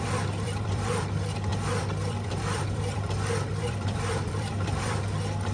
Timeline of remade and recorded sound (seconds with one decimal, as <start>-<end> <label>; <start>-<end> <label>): 0.0-5.5 remade